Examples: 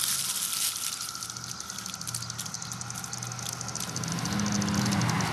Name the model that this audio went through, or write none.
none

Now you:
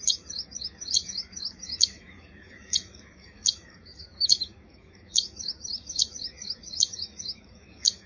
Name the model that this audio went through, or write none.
autoencoder, DAC-VAE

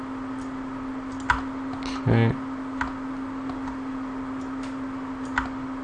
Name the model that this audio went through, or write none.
none